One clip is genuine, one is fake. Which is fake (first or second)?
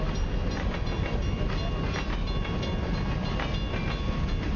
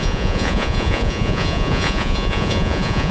second